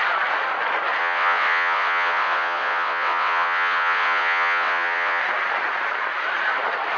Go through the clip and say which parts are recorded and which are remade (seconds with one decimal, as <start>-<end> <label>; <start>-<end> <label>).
0.0-1.0 recorded; 1.0-5.2 remade; 5.2-7.0 recorded